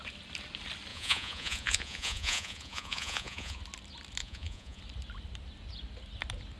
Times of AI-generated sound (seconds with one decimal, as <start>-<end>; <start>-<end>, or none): 0.9-3.6; 4.2-4.8